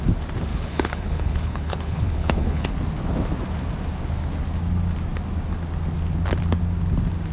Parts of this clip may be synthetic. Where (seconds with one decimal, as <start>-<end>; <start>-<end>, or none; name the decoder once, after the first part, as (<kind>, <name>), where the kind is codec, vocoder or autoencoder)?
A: 0.5-2.7 (codec, HILCodec)